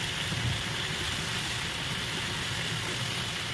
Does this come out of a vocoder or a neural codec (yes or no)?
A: no